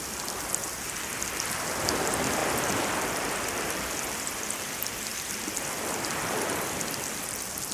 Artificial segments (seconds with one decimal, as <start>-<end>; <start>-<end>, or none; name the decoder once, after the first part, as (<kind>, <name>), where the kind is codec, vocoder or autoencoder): 0.0-2.4 (vocoder, BigVGAN v2); 3.5-5.1; 6.2-7.7